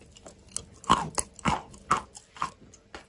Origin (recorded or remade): recorded